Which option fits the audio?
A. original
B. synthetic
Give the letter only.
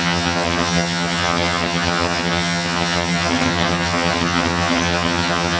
B